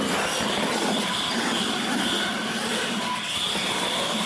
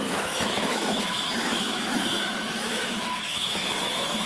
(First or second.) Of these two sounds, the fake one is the second